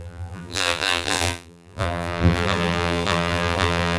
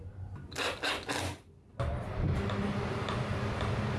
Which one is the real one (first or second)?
second